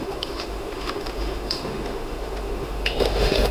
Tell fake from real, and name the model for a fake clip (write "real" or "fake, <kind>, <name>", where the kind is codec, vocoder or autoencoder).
fake, autoencoder, DAC-VAE